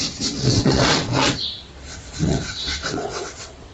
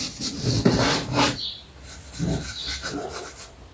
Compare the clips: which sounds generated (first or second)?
first